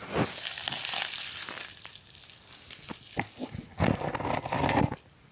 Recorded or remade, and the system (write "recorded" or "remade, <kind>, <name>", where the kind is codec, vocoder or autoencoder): recorded